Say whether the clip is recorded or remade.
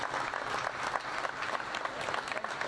recorded